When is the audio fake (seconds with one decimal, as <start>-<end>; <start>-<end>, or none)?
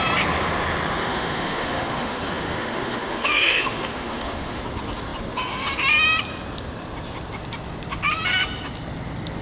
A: 1.0-4.6